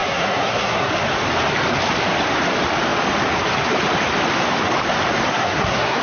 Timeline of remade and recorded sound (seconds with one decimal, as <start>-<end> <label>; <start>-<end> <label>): 0.0-0.9 remade; 0.9-5.3 recorded; 5.3-6.0 remade